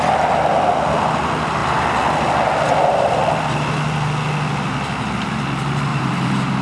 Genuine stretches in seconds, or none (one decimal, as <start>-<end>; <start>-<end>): 0.0-5.9